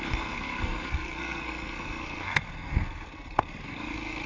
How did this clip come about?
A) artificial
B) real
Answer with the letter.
A